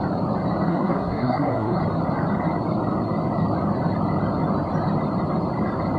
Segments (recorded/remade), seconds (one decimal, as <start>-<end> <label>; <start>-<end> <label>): 0.0-0.7 recorded; 0.7-1.8 remade; 1.8-6.0 recorded